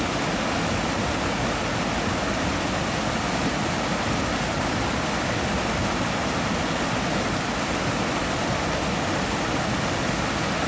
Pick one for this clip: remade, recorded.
recorded